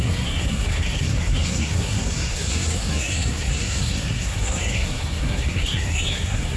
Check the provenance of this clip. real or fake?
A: fake